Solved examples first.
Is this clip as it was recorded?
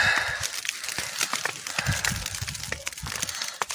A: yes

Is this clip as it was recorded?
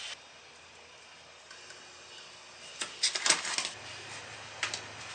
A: yes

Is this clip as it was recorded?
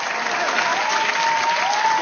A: no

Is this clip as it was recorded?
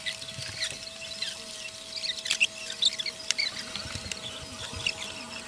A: yes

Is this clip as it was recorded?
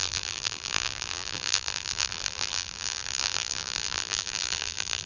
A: no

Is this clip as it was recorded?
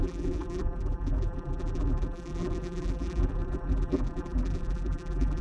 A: no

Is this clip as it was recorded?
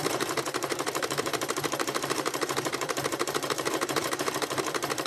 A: no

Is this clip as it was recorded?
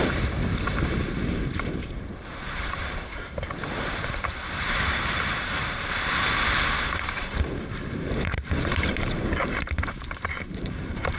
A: no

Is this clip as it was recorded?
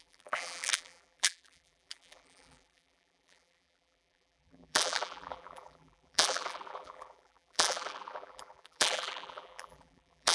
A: no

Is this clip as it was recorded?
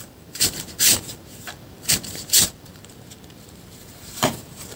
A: no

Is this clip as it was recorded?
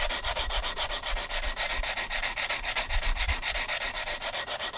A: no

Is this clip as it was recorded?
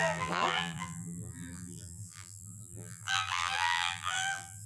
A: no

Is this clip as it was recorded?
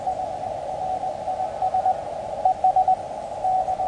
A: yes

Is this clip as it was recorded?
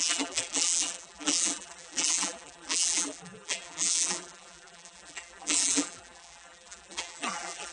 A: no